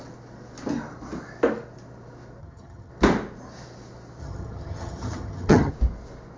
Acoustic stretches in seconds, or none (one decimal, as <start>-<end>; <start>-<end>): 0.0-2.4; 2.9-4.2; 5.7-6.4

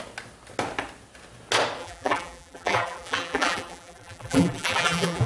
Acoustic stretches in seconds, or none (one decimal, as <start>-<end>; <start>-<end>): 0.0-1.8

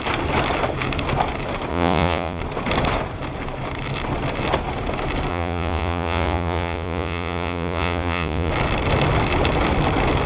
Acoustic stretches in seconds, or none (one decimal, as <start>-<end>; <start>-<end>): 0.0-1.7; 2.4-5.3; 8.5-10.3

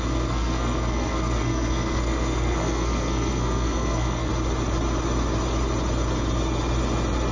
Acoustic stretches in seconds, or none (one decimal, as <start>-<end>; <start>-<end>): 4.3-7.3

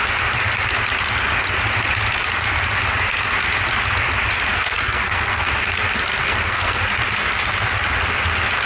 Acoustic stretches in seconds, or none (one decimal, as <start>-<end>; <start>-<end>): 0.0-4.5; 5.5-6.2; 6.9-8.7

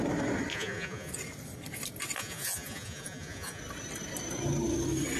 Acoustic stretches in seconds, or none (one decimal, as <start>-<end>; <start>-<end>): 0.0-0.5; 1.1-2.2; 3.6-5.2

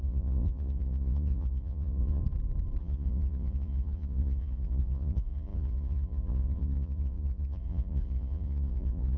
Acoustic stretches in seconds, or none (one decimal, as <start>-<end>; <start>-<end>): 2.2-2.8

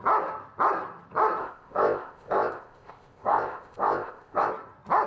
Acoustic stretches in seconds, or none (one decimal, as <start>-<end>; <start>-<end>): 0.0-1.4; 4.5-5.1